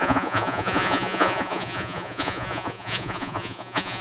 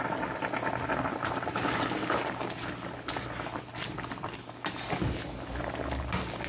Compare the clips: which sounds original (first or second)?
second